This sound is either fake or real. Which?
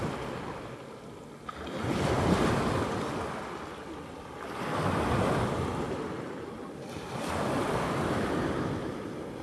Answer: real